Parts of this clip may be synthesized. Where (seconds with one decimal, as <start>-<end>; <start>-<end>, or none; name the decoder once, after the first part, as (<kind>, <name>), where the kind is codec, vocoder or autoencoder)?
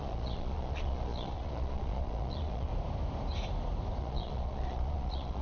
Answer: 0.0-2.7 (vocoder, Vocos); 4.0-5.4